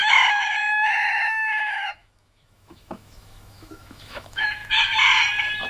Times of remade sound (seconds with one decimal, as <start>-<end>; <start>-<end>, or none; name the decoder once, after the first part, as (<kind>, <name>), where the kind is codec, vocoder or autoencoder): 0.0-4.6 (autoencoder, DAC-VAE)